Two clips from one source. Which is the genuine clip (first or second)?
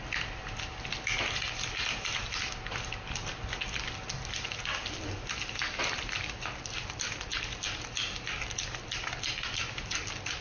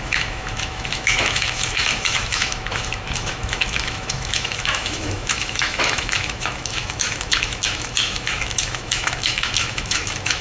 first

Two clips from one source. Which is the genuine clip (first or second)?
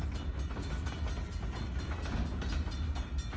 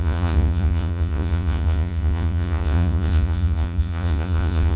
first